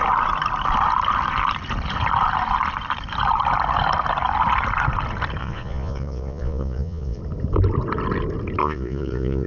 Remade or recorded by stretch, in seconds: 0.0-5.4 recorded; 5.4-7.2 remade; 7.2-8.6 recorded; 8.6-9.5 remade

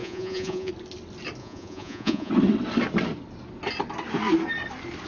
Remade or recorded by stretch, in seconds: 0.0-0.7 remade; 0.7-1.4 recorded; 1.4-2.3 remade; 2.3-5.1 recorded

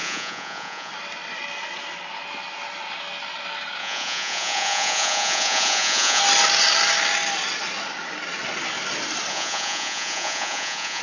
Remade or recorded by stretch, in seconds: 0.0-0.9 remade; 0.9-3.8 recorded; 3.8-6.2 remade; 6.2-9.3 recorded; 9.3-11.0 remade

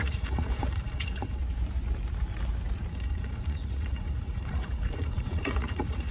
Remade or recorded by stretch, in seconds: 0.0-1.4 remade; 1.4-2.9 recorded; 2.9-6.1 remade

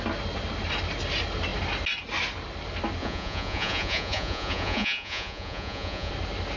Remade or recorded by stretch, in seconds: 0.0-3.0 recorded; 3.0-6.1 remade; 6.1-6.6 recorded

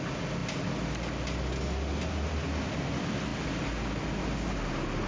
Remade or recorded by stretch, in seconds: 0.0-5.1 recorded